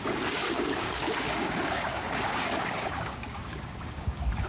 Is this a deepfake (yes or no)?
yes